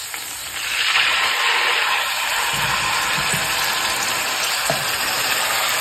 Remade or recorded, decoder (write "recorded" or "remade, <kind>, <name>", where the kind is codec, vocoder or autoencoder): recorded